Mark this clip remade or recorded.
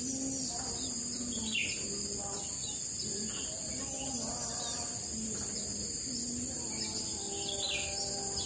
recorded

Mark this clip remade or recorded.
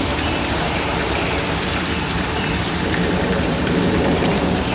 remade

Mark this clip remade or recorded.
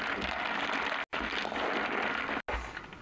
recorded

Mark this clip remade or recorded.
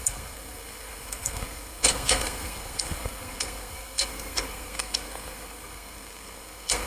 remade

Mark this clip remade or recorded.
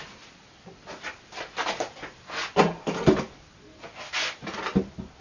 recorded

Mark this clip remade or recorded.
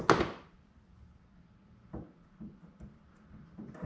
recorded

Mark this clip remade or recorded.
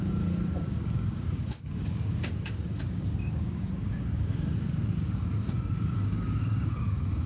remade